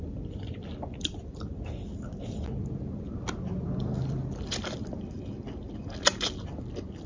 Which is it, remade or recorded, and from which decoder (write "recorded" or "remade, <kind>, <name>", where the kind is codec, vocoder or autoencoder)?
remade, vocoder, BigVGAN v2